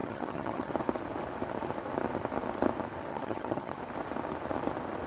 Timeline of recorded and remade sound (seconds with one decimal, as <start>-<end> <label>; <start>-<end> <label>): 0.0-0.7 remade; 0.7-3.1 recorded; 3.1-3.8 remade; 3.8-5.1 recorded